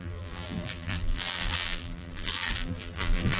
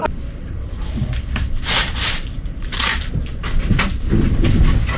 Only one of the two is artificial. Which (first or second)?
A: first